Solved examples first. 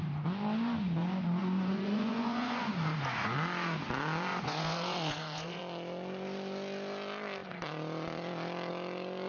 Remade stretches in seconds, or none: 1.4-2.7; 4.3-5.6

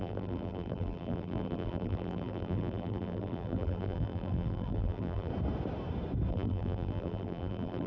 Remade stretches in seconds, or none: 0.0-5.3; 6.3-7.9